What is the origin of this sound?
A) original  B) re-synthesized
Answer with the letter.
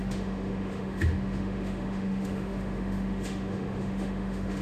B